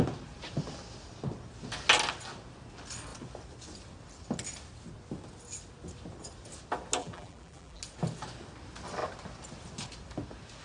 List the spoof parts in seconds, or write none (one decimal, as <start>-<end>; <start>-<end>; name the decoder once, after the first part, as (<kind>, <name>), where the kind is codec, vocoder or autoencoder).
7.0-7.8 (vocoder, BigVGAN v2)